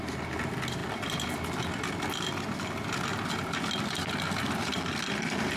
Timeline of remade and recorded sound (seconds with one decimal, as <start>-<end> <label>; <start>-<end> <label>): 0.0-5.6 recorded